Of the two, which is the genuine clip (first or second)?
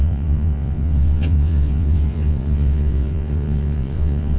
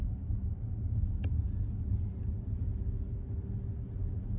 second